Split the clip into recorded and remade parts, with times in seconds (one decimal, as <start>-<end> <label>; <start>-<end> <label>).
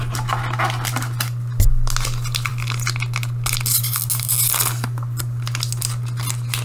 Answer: 0.0-6.6 recorded